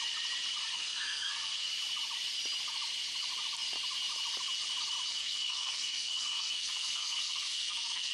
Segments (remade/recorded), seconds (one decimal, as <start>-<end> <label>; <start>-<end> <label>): 0.0-0.7 recorded; 0.7-1.7 remade; 1.7-5.1 recorded; 5.1-8.1 remade